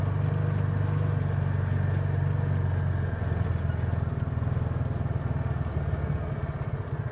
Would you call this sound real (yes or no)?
yes